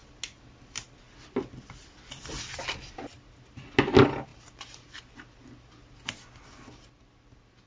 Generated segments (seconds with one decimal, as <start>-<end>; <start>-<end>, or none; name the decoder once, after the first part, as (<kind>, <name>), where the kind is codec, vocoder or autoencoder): 4.3-5.0 (vocoder, BigVGAN v2)